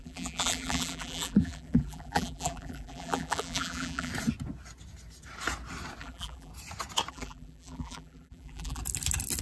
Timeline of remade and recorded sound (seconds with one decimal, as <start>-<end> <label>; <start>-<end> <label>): 0.0-4.1 remade; 4.1-6.0 recorded; 6.0-6.5 remade; 6.5-7.1 recorded; 7.1-8.8 remade; 8.8-9.4 recorded